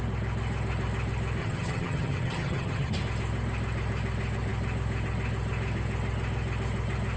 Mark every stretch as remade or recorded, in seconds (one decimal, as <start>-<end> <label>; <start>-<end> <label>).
0.0-1.4 recorded; 1.4-2.9 remade; 2.9-7.2 recorded